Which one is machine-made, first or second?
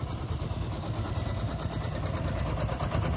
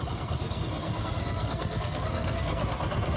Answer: second